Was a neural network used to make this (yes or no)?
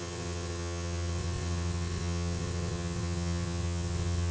yes